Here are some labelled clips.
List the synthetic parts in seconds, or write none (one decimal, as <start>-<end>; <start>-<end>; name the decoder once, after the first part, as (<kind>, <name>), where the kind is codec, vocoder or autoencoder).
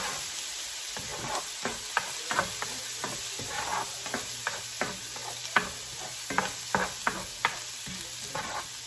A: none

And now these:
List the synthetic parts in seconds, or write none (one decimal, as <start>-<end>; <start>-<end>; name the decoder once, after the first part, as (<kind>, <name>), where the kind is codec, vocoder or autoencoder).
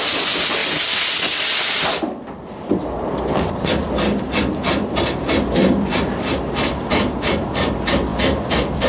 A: 0.0-0.6 (vocoder, BigVGAN v2); 1.4-8.9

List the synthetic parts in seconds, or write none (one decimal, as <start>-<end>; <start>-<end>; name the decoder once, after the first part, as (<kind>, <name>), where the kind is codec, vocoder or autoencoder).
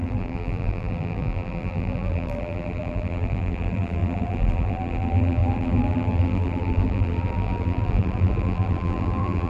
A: 0.0-9.5 (vocoder, BigVGAN v2)